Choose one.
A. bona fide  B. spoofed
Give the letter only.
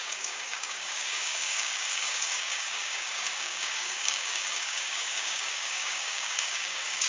B